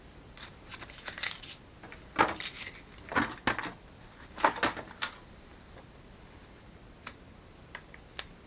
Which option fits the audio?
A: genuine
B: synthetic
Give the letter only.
A